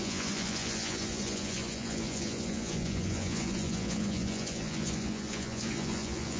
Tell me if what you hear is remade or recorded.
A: remade